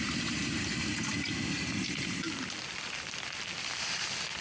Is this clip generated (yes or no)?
no